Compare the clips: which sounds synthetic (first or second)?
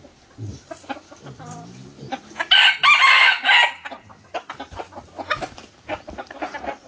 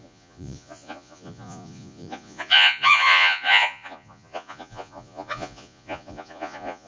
second